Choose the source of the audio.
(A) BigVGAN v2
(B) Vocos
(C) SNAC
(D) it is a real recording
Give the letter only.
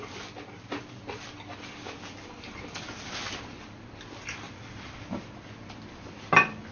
D